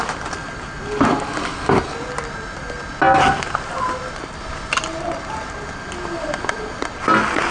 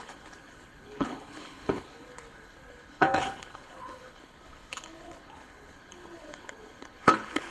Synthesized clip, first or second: second